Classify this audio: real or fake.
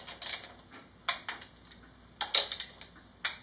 real